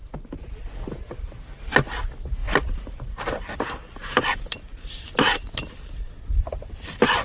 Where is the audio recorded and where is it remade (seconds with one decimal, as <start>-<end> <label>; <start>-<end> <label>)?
0.0-7.2 recorded